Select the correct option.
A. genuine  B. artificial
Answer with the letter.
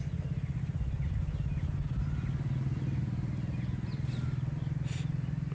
A